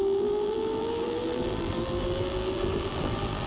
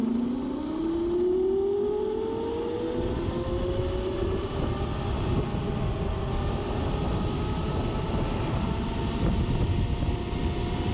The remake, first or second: first